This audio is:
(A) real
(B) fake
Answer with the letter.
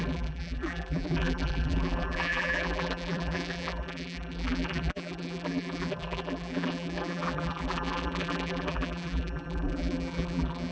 B